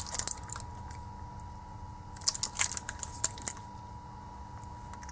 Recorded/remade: recorded